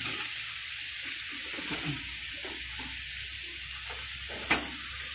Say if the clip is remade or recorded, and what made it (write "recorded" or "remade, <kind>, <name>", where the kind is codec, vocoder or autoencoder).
recorded